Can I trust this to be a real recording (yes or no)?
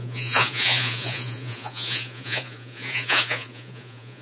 no